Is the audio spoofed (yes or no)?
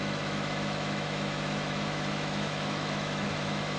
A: yes